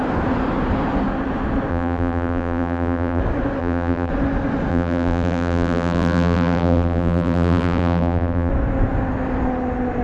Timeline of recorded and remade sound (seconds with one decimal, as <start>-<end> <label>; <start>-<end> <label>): 0.0-1.7 recorded; 1.7-3.2 remade; 3.2-3.6 recorded; 3.6-4.1 remade; 4.1-4.7 recorded; 4.7-8.5 remade; 8.5-10.0 recorded